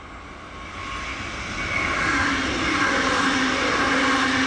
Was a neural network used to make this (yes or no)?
no